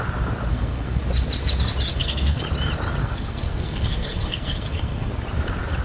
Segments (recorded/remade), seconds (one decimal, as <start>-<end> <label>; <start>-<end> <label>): 0.0-0.5 recorded; 0.5-1.0 remade; 1.0-1.9 recorded; 1.9-2.4 remade; 2.4-3.0 recorded; 3.0-5.1 remade; 5.1-5.8 recorded